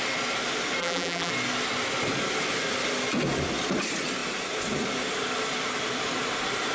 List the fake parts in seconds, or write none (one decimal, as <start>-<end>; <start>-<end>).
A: 0.8-1.3